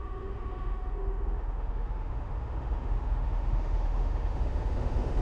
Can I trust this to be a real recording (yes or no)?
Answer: no